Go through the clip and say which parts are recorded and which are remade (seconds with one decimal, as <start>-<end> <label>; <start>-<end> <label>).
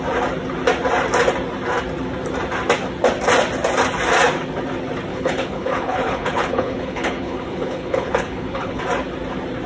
0.0-5.1 recorded; 5.1-8.8 remade; 8.8-9.7 recorded